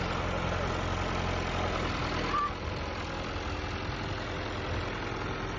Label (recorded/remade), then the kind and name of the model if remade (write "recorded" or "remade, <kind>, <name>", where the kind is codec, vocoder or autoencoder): recorded